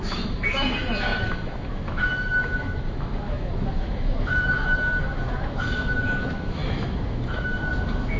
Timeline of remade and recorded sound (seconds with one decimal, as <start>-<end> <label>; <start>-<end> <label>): 0.0-8.2 remade